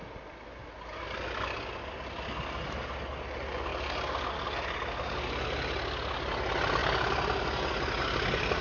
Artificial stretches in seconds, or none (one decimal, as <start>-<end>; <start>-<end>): none